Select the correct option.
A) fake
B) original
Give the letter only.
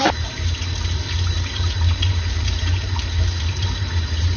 A